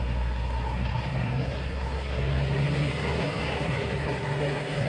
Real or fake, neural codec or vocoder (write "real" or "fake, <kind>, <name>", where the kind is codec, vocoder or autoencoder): fake, codec, SNAC